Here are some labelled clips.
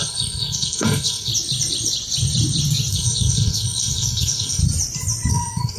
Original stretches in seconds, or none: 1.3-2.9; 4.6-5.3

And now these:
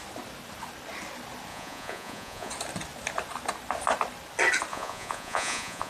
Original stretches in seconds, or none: 0.0-1.5; 2.5-4.7